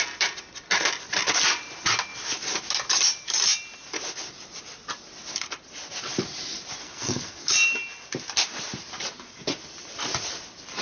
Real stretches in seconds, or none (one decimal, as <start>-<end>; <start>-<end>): 0.0-6.8; 7.5-10.8